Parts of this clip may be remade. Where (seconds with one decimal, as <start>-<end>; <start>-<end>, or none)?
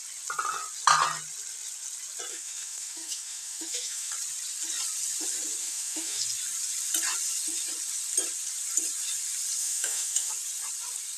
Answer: 2.3-4.1; 5.6-6.2; 9.6-10.3